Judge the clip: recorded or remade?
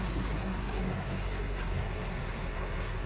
remade